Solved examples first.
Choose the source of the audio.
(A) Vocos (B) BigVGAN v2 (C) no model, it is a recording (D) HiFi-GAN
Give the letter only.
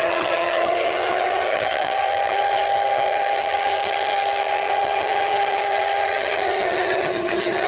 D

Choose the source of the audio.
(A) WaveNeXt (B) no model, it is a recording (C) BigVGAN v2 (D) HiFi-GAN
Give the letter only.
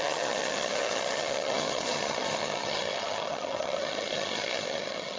D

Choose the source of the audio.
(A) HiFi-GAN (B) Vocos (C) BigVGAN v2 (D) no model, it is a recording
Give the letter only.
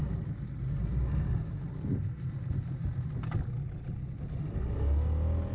D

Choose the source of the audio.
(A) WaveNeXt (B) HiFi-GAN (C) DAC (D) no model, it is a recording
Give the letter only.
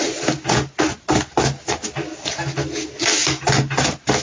D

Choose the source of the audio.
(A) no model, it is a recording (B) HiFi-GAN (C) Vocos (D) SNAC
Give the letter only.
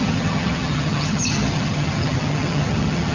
B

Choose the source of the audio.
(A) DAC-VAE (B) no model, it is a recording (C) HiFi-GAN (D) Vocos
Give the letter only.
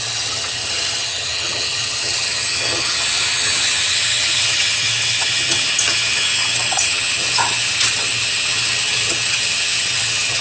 C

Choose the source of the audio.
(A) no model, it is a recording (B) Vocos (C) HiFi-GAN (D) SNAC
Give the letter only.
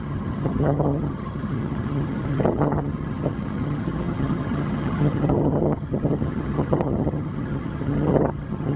C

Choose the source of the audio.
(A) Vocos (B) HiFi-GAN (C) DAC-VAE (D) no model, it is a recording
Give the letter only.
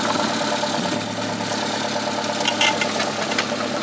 D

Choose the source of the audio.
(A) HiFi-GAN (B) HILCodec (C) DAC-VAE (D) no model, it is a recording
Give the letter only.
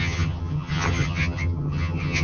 A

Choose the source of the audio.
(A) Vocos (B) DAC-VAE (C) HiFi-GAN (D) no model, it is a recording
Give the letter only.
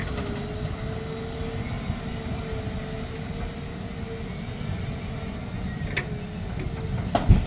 D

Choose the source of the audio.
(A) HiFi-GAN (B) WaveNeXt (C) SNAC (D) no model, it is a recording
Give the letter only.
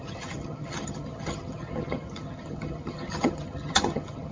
A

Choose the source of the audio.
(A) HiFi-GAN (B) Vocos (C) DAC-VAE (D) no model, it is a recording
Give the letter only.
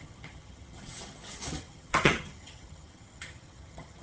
A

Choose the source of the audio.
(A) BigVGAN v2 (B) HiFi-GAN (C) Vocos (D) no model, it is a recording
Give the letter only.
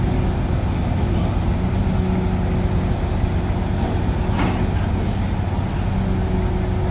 D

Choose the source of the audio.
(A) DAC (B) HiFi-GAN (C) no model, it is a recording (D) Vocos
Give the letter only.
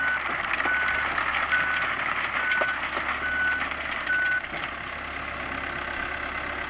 C